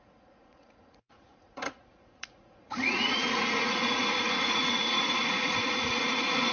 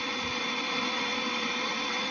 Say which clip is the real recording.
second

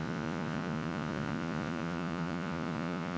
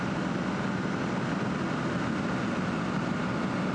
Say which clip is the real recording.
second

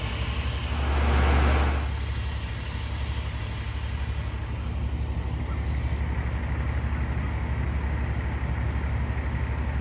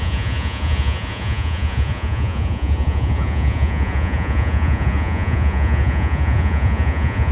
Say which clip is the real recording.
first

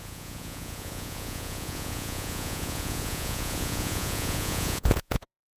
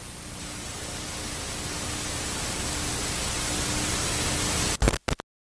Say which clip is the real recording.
second